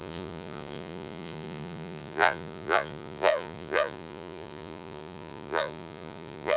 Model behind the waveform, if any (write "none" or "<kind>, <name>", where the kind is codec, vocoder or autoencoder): vocoder, Vocos